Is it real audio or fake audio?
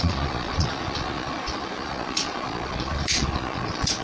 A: fake